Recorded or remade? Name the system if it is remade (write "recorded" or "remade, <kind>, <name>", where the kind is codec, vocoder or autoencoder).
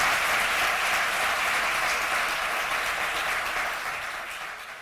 recorded